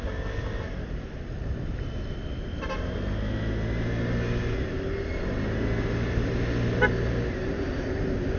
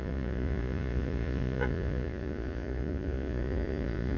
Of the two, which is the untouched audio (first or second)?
first